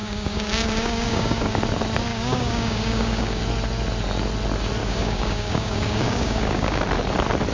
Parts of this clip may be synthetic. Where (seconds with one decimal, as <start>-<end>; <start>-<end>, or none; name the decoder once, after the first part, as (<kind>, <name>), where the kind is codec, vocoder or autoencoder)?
0.0-1.6 (codec, DAC); 2.1-3.4; 4.8-6.8